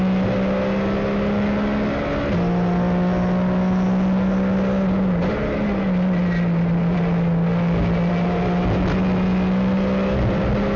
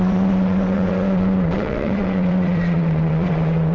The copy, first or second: second